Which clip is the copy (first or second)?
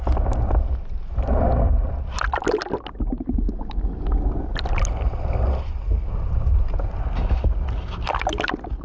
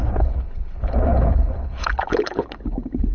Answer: second